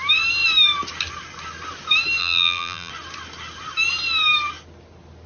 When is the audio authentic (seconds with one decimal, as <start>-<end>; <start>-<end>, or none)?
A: 0.0-2.2; 2.9-5.3